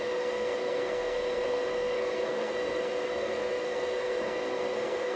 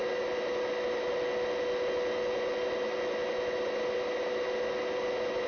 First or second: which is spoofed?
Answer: first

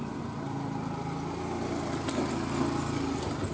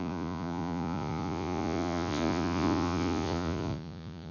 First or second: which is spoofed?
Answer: second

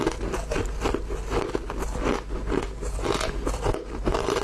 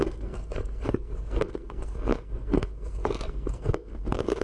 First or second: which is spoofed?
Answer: second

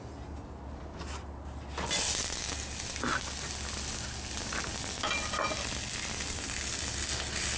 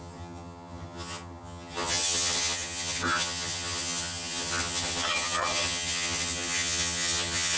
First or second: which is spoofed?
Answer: second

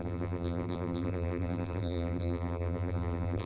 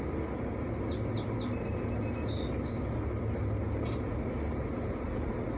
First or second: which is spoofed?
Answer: first